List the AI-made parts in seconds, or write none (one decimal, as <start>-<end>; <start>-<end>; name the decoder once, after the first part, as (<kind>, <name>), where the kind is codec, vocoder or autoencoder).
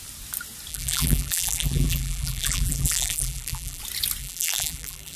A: 0.7-3.8 (vocoder, BigVGAN v2); 4.2-5.2